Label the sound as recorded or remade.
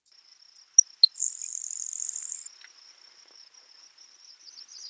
recorded